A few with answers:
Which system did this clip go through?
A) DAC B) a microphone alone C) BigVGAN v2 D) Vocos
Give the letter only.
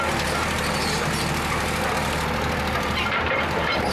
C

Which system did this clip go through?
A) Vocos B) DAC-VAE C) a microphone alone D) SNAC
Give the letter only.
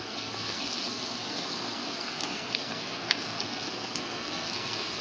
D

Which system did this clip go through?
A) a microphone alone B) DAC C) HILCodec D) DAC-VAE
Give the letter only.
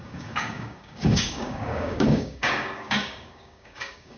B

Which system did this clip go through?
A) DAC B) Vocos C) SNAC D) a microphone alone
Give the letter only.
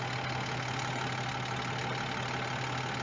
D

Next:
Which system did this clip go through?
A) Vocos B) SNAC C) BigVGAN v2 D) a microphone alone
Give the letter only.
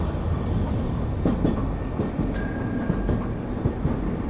D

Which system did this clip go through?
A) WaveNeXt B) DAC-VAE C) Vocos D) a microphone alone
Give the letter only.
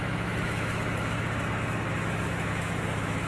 B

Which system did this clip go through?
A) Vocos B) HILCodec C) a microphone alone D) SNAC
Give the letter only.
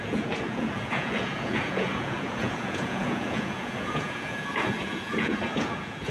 A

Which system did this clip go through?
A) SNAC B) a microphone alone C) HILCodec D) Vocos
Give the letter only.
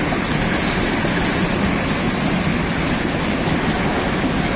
B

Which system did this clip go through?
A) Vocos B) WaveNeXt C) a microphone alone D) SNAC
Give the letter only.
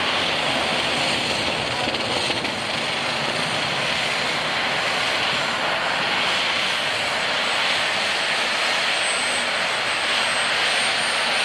C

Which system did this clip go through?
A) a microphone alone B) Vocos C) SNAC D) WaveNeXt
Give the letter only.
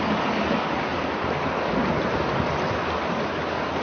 A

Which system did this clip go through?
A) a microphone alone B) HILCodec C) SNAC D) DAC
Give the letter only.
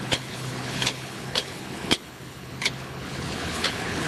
B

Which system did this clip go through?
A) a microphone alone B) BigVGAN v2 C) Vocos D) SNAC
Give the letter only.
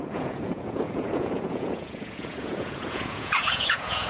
C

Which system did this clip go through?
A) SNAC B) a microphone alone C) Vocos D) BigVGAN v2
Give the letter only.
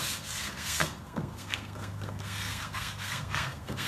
A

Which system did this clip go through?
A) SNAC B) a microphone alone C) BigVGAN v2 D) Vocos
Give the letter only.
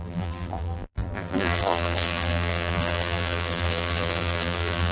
C